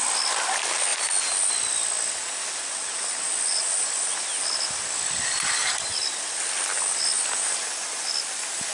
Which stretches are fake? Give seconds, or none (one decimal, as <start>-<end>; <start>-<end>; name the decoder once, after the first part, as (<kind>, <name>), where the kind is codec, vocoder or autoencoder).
none